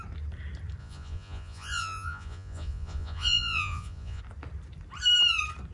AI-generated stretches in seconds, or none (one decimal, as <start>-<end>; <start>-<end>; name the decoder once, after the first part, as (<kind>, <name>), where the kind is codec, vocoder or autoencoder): 0.8-4.2 (vocoder, Vocos)